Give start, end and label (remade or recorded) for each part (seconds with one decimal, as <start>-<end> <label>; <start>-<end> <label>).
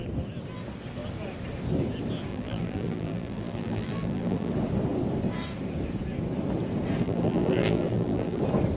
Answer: 0.0-2.3 recorded; 2.3-4.5 remade; 4.5-7.0 recorded; 7.0-8.4 remade; 8.4-8.8 recorded